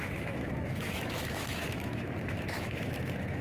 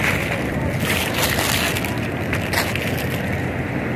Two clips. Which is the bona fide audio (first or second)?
second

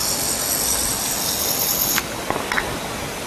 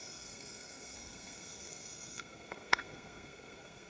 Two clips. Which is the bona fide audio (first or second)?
first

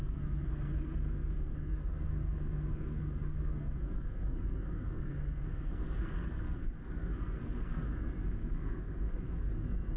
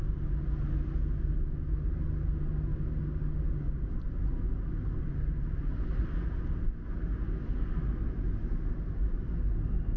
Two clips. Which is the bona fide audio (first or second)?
second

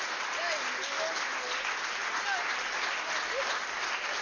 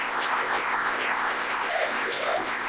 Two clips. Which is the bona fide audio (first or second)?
first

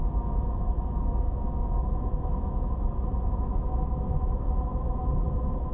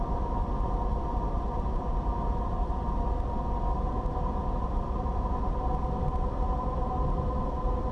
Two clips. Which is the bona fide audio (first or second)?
second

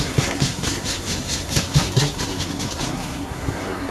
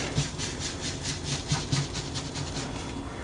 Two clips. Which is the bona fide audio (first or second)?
second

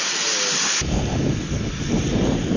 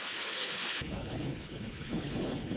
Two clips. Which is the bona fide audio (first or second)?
first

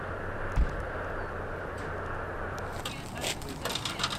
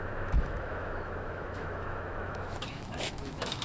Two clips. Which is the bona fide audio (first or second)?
first